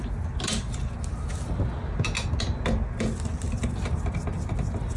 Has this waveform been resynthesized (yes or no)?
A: no